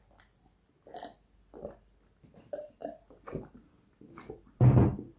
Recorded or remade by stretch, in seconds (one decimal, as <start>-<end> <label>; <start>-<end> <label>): 0.0-5.2 recorded